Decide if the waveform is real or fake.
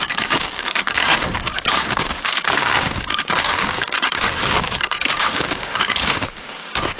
fake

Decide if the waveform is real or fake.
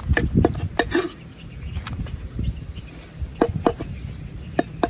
real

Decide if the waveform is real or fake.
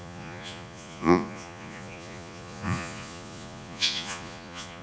fake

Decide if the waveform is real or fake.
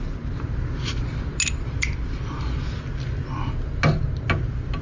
real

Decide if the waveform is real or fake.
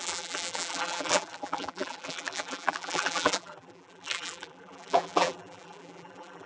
fake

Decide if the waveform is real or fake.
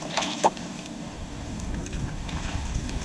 fake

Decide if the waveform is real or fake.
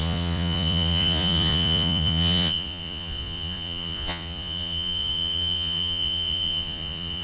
fake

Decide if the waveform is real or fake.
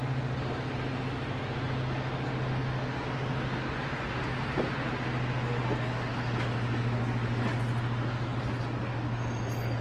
real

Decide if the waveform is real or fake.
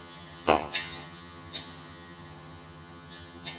fake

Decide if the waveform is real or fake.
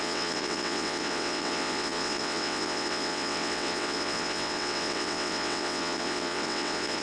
fake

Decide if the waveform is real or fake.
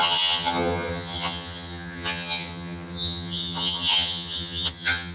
fake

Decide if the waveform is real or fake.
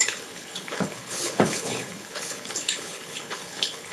fake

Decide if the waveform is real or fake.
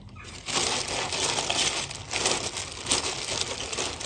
real